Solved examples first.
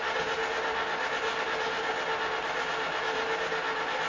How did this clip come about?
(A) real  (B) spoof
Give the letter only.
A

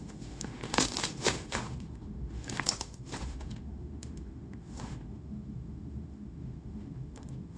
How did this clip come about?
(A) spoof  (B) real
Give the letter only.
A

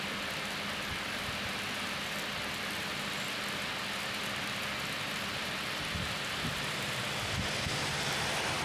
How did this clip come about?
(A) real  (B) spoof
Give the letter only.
A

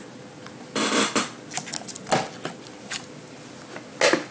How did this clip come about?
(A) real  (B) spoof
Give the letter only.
A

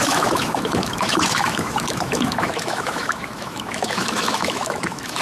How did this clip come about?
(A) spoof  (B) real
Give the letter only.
A